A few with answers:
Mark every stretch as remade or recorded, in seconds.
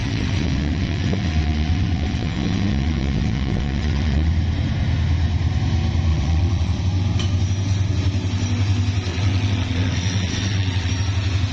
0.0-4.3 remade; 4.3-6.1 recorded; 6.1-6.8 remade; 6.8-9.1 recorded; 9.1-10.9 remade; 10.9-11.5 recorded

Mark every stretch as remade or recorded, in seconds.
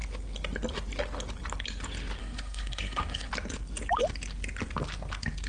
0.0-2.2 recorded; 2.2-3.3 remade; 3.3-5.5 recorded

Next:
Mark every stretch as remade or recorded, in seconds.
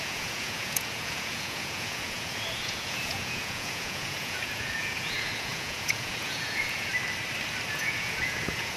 0.0-6.9 remade; 6.9-7.7 recorded; 7.7-8.8 remade